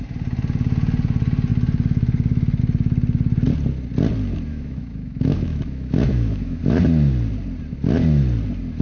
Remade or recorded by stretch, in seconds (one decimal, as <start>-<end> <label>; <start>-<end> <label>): 0.0-4.5 recorded; 4.5-6.6 remade; 6.6-8.8 recorded